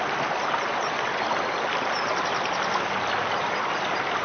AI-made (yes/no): no